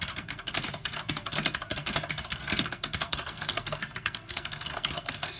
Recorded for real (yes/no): no